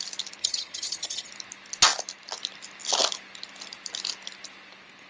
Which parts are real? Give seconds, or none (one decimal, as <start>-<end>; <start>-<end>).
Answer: 0.0-0.4; 1.3-5.1